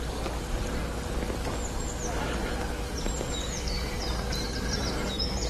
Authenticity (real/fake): real